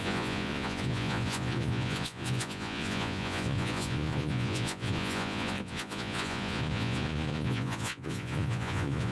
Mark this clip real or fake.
fake